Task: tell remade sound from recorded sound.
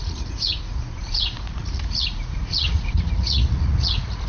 remade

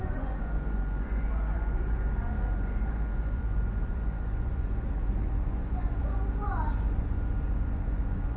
remade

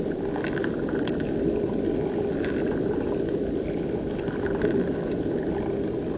recorded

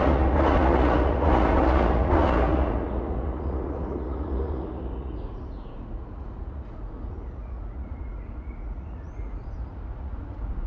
remade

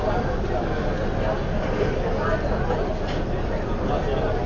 recorded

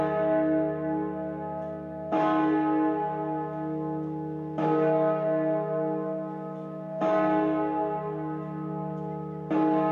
recorded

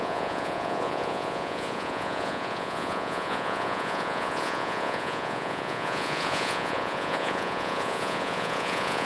remade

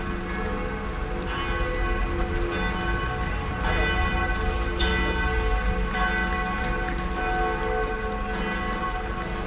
recorded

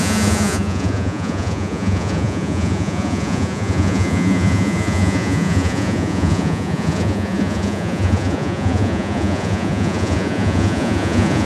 remade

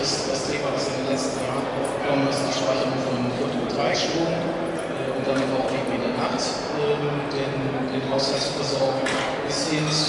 recorded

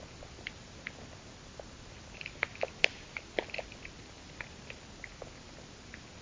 recorded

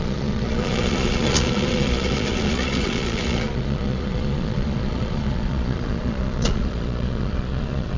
remade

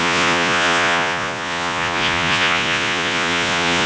remade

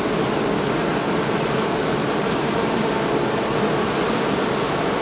recorded